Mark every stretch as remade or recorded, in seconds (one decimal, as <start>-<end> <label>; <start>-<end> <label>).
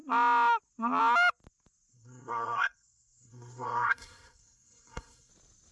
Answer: 0.0-1.9 recorded; 1.9-5.3 remade; 5.3-5.7 recorded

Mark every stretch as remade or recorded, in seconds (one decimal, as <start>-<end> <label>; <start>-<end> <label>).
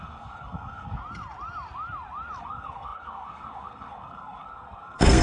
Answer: 0.0-1.0 remade; 1.0-2.4 recorded; 2.4-5.2 remade